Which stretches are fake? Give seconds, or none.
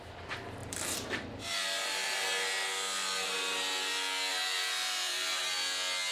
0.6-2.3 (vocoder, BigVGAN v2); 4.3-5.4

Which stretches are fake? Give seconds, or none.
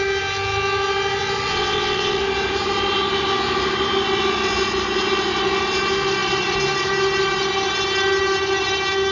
1.5-2.2 (vocoder, WaveNeXt)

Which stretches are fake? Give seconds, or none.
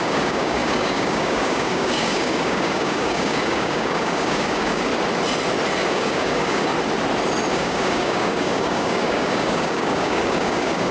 0.0-4.9 (codec, DAC); 5.9-6.7; 7.5-10.9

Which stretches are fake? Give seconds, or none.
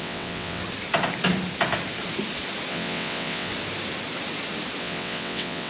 0.0-0.6 (vocoder, WaveNeXt); 2.7-3.5; 4.8-5.7